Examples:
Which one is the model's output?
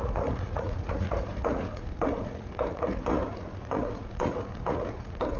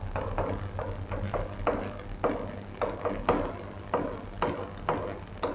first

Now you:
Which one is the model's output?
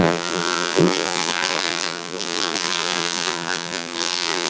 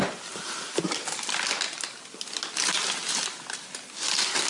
first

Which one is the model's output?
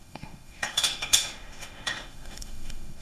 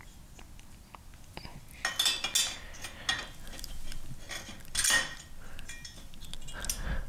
first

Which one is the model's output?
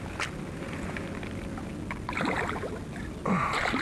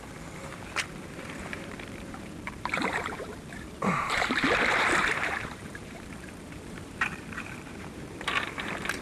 second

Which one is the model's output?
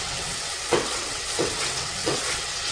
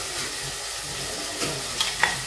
first